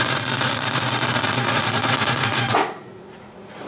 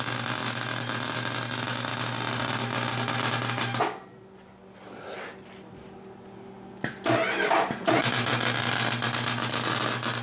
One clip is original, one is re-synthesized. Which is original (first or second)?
second